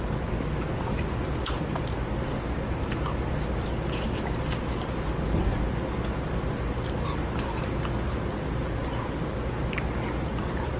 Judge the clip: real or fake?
real